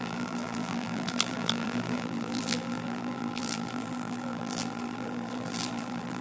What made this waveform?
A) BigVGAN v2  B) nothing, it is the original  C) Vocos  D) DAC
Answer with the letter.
A